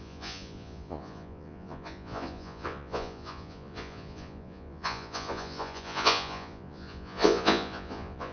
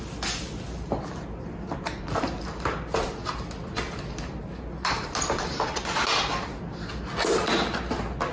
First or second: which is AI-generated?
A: first